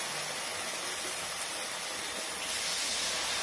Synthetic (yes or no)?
no